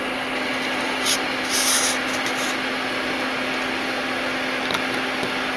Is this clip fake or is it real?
real